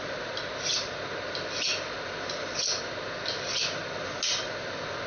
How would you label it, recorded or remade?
recorded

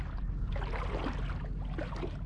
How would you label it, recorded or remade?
recorded